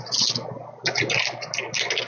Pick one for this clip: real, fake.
real